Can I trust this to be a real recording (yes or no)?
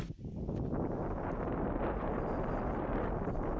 yes